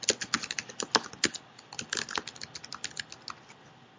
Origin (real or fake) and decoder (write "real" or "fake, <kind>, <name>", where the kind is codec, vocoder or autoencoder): real